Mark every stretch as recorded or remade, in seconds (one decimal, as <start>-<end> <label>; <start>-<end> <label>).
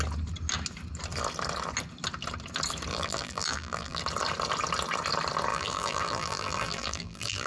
0.0-2.9 recorded; 2.9-4.0 remade; 4.0-5.5 recorded; 5.5-7.5 remade